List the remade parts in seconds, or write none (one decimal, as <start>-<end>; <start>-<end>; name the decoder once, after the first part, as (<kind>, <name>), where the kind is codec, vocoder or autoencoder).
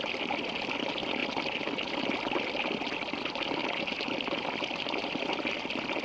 none